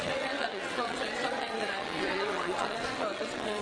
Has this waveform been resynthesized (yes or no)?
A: yes